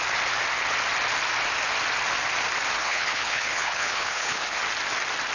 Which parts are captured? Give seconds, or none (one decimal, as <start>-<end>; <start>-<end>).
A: 0.0-2.8; 4.6-5.3